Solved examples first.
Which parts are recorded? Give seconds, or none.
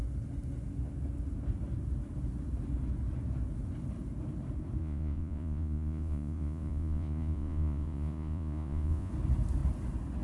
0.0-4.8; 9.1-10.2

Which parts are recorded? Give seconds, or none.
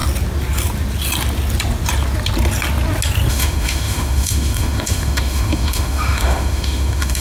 0.0-3.3